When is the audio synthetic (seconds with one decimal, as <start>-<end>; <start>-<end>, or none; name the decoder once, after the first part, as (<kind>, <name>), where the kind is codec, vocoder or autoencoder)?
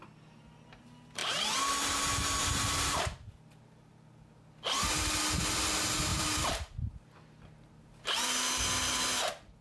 2.4-3.0 (vocoder, BigVGAN v2); 6.1-7.1